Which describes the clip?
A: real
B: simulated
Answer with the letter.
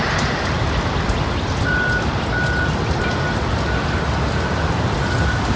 A